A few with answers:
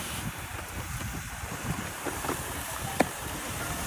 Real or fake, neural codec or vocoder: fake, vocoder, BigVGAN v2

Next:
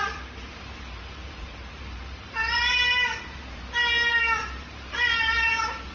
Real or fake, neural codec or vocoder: fake, vocoder, BigVGAN v2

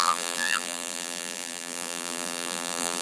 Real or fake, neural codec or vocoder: fake, vocoder, BigVGAN v2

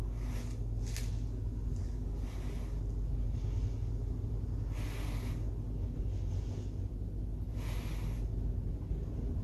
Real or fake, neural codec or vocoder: real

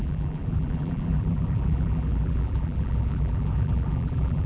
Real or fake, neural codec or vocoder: fake, vocoder, BigVGAN v2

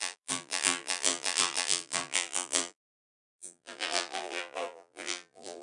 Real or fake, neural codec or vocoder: fake, vocoder, BigVGAN v2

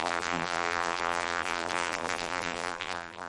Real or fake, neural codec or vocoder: fake, vocoder, BigVGAN v2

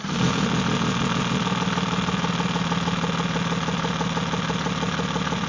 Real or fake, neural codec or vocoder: real